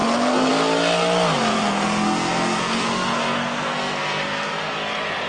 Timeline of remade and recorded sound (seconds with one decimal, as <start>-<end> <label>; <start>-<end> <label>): 0.0-0.5 remade; 0.5-1.5 recorded; 1.5-4.7 remade; 4.7-5.3 recorded